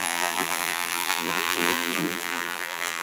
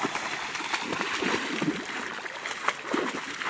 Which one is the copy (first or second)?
first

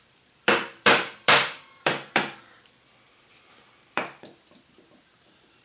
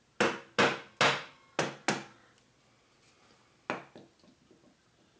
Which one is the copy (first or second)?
first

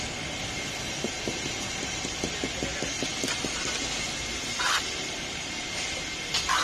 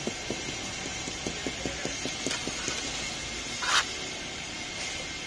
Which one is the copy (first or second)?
first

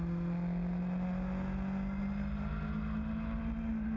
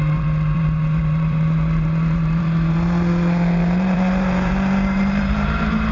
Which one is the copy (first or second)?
second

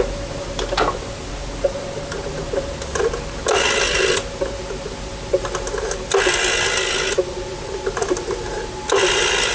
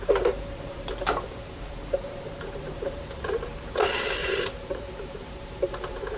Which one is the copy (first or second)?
second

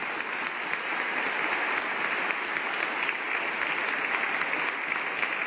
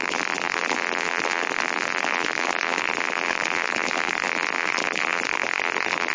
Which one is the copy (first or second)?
second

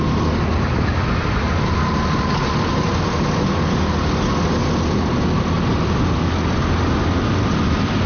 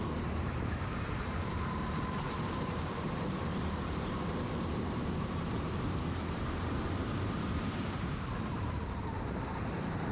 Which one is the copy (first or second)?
second